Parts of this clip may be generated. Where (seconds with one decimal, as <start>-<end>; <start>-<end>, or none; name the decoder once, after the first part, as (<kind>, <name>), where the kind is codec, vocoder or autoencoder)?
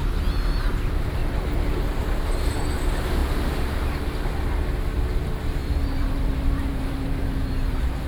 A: 1.2-2.2 (vocoder, BigVGAN v2); 3.2-4.0; 5.6-8.1